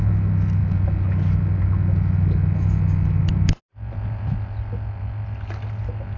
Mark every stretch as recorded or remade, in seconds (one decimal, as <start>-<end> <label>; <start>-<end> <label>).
0.0-6.2 recorded